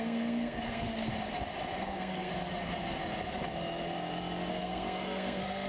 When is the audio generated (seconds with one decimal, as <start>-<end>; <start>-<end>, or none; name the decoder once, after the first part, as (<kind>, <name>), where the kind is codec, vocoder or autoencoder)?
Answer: 0.0-1.1 (codec, SNAC); 1.8-2.3; 4.5-5.7

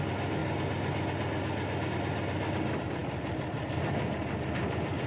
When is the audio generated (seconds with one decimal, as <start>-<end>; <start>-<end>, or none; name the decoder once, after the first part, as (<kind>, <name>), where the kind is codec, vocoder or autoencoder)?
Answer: none

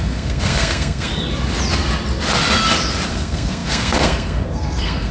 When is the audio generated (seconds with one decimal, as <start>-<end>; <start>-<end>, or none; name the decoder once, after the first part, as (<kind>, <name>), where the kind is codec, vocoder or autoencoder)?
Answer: 0.0-1.1 (codec, SNAC); 3.1-5.1

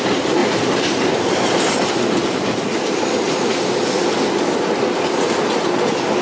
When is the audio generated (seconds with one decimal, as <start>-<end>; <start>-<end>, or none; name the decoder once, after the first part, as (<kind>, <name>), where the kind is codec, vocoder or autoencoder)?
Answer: none

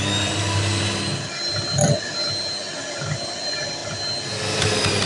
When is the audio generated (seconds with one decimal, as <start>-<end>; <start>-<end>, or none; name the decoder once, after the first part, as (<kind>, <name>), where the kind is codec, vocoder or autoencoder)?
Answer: none